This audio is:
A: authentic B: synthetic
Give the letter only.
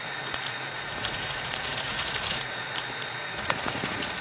B